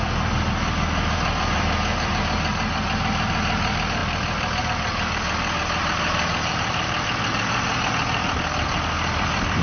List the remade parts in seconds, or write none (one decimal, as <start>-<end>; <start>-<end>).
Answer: none